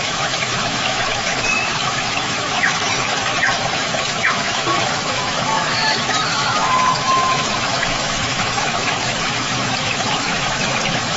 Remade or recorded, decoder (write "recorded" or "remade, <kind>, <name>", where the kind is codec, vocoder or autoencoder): remade, autoencoder, DAC-VAE